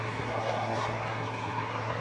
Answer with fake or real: fake